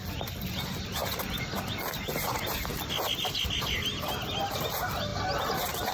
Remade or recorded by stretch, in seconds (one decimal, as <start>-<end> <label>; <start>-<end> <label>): 0.0-5.9 recorded